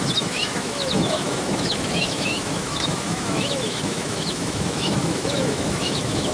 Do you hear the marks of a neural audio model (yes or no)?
yes